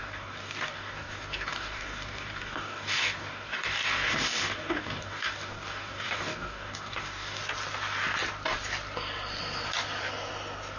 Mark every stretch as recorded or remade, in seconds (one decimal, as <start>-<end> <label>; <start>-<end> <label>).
0.0-7.4 remade; 7.4-10.8 recorded